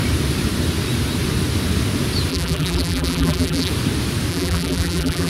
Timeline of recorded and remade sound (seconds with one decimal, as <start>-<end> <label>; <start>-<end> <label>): 0.0-2.3 recorded; 2.3-3.7 remade; 3.7-4.3 recorded; 4.3-5.3 remade